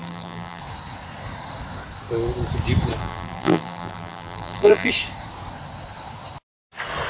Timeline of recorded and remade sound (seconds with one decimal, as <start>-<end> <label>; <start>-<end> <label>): 0.0-0.6 remade; 0.6-3.0 recorded; 3.0-4.9 remade; 4.9-7.1 recorded